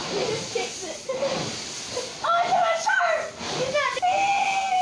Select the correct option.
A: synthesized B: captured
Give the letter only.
B